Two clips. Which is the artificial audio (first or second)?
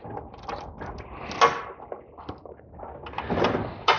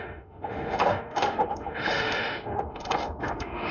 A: second